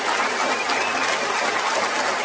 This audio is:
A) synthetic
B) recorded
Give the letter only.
B